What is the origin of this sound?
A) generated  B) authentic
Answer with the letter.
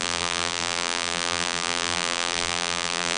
A